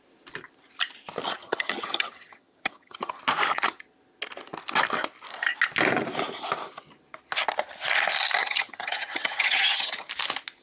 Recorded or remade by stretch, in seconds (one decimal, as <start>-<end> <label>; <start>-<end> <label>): 0.0-1.2 recorded; 1.2-3.2 remade; 3.2-8.4 recorded; 8.4-10.1 remade; 10.1-10.6 recorded